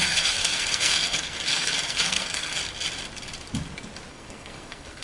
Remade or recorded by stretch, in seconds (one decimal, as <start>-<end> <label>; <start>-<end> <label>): 0.0-2.6 remade; 2.6-4.1 recorded; 4.1-5.0 remade